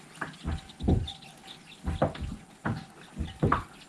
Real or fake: real